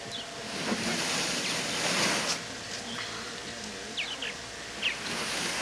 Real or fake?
real